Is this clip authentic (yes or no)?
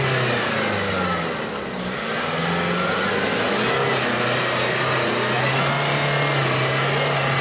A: yes